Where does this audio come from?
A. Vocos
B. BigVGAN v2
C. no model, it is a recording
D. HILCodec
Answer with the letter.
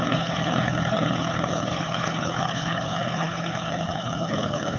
D